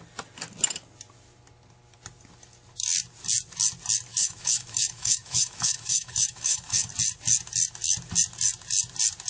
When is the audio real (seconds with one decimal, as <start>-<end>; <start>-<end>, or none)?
0.0-4.1; 6.9-9.3